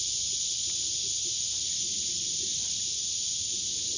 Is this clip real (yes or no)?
yes